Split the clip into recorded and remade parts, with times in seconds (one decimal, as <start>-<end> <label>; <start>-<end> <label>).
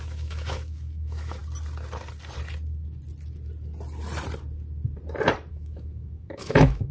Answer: 0.0-1.4 remade; 1.4-5.5 recorded; 5.5-6.9 remade